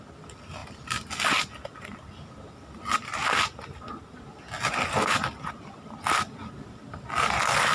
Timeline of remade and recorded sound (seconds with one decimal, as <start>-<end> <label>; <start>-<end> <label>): 0.0-7.7 recorded